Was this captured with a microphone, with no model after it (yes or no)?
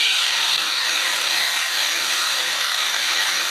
no